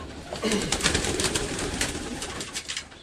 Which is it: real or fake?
fake